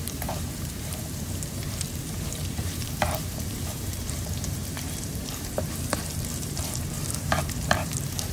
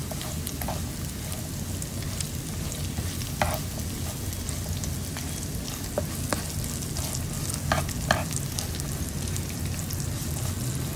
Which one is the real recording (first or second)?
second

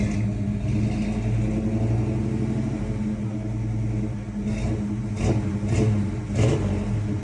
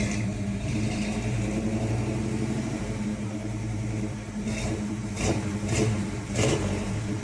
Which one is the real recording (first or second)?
first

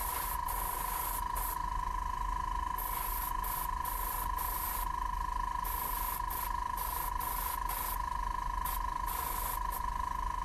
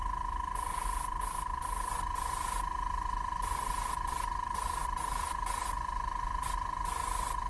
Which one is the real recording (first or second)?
first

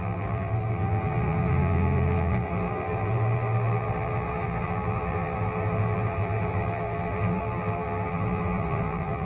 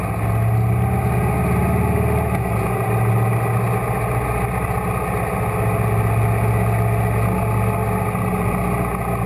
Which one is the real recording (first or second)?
second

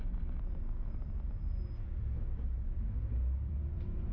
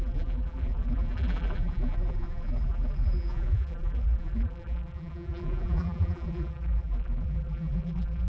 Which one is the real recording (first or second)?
first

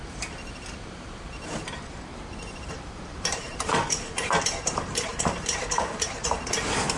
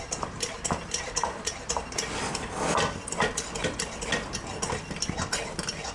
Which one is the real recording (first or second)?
second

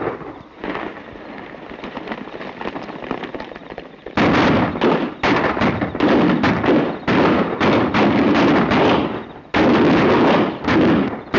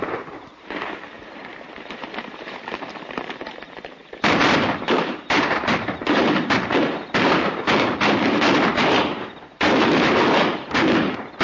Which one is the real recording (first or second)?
first